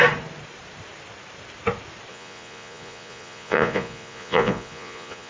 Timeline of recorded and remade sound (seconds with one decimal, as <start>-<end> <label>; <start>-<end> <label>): 0.0-2.1 recorded; 2.1-5.3 remade